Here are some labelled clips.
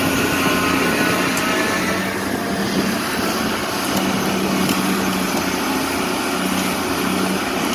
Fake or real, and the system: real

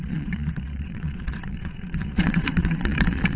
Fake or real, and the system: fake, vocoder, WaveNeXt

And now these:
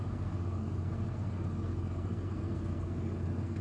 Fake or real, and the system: fake, codec, SNAC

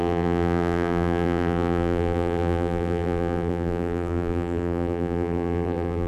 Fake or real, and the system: fake, vocoder, BigVGAN v2